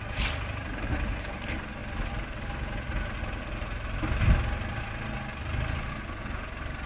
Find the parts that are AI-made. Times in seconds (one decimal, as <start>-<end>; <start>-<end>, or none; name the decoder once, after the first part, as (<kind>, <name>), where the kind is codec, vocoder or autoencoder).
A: none